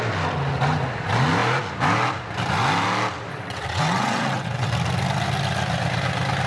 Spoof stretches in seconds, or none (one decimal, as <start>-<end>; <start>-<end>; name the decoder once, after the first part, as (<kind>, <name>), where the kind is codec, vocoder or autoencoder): 3.3-4.7 (vocoder, WaveNeXt)